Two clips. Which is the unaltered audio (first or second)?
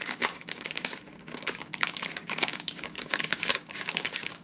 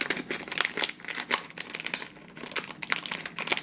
second